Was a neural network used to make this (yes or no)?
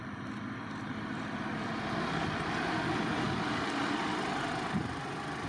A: no